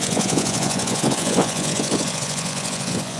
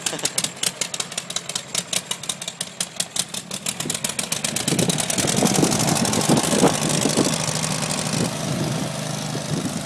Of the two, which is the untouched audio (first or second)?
second